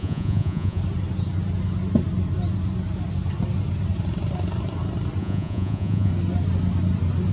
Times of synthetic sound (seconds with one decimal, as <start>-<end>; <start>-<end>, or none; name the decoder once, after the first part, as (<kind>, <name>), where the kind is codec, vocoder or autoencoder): 0.0-0.8 (vocoder, Vocos); 5.2-6.1